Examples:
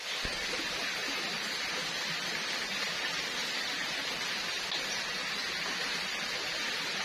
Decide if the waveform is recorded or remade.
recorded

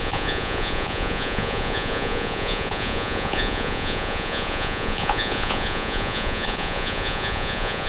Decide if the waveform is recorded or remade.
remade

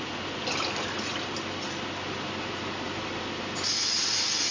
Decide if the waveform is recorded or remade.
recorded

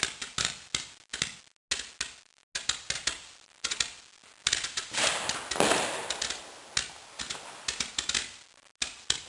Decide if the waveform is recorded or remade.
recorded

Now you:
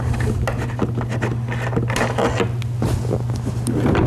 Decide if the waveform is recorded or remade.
recorded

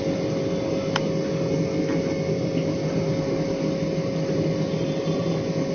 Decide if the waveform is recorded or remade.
recorded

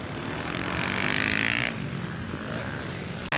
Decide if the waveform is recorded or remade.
recorded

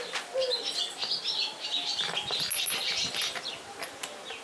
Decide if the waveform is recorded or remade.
recorded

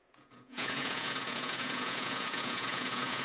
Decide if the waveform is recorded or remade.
remade